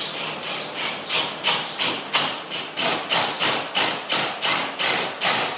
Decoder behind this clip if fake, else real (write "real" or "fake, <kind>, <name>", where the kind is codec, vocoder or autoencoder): real